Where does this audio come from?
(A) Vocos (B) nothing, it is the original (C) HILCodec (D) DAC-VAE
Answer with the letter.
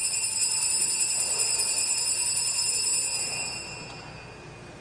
B